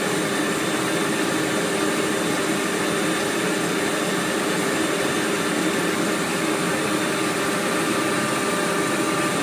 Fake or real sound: real